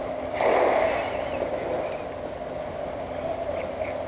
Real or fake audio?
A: real